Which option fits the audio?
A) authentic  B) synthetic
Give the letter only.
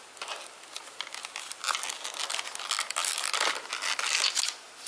A